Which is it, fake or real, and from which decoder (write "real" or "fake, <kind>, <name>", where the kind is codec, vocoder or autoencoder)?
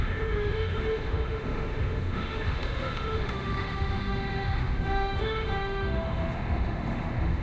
fake, autoencoder, DAC-VAE